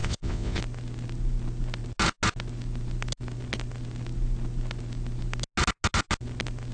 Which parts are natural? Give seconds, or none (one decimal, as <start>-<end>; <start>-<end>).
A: 0.6-6.7